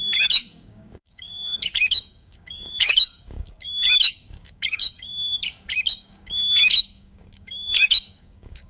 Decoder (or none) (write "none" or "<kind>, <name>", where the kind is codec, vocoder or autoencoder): codec, DAC